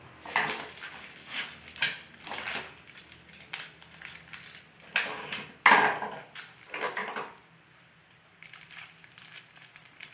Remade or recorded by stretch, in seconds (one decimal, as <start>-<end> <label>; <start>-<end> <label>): 0.0-7.0 recorded; 7.0-9.7 remade; 9.7-10.1 recorded